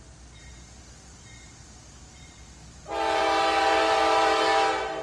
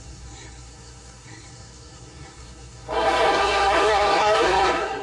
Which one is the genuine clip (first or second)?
first